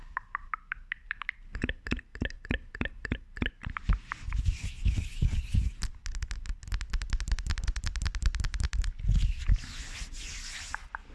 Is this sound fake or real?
real